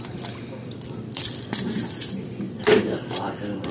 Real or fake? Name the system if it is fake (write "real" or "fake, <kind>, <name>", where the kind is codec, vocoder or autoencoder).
fake, vocoder, BigVGAN v2